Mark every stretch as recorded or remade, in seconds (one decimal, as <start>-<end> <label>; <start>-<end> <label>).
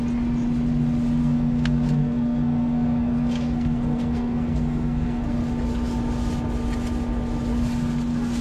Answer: 0.0-1.2 recorded; 1.2-5.4 remade; 5.4-8.4 recorded